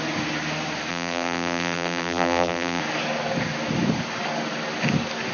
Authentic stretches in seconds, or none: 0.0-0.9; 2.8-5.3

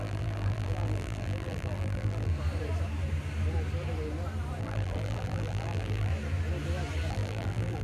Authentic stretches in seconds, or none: 2.3-4.6; 6.1-7.1

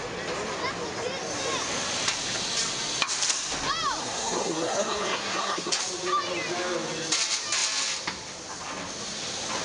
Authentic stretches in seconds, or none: 0.0-4.0; 5.8-9.6

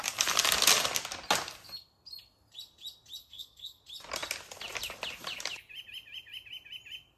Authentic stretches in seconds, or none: 0.0-3.2; 3.8-7.2

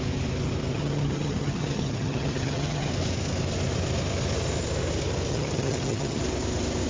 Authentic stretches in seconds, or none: 0.0-0.7; 2.9-5.3; 6.2-6.9